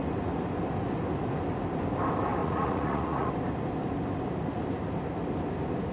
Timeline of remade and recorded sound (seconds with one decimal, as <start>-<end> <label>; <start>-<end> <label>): 0.0-2.4 recorded; 2.4-3.3 remade; 3.3-5.9 recorded